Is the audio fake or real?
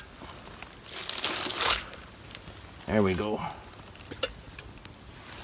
real